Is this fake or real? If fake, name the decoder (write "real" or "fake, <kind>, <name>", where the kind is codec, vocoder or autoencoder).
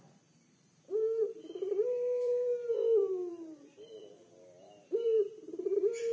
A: fake, vocoder, BigVGAN v2